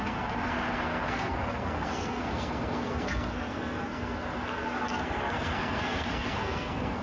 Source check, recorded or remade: remade